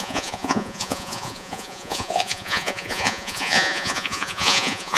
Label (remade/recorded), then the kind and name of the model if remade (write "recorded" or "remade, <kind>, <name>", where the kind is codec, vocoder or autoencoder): remade, vocoder, Vocos